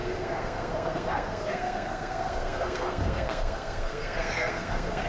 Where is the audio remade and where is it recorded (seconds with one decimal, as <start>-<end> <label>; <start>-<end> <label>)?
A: 0.0-5.1 remade